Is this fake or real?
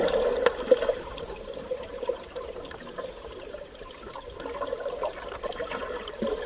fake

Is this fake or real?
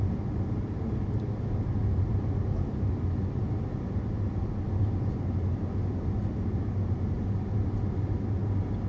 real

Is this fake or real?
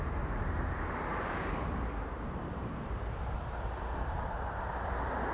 fake